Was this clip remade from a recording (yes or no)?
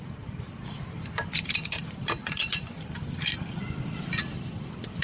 yes